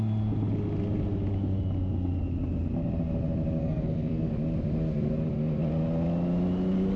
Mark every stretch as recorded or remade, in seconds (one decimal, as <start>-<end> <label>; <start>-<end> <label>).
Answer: 0.0-3.6 recorded; 3.6-4.3 remade; 4.3-7.0 recorded